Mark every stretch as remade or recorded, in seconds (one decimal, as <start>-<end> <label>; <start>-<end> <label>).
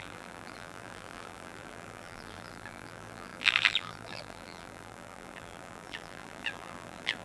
0.0-7.2 remade